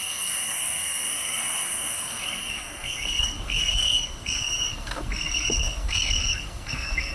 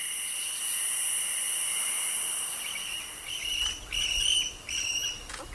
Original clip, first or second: second